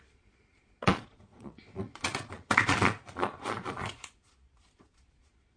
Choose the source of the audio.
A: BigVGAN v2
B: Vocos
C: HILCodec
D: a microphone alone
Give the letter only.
B